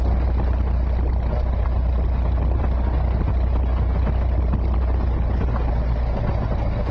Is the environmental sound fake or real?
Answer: real